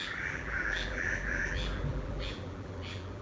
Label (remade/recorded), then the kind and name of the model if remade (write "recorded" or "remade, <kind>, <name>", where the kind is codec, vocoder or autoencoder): remade, vocoder, BigVGAN v2